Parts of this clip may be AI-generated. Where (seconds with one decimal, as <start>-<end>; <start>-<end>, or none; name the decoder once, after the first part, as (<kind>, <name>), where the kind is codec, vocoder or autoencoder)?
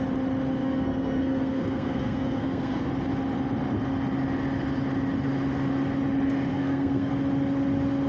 0.6-2.9 (codec, SNAC); 6.5-7.1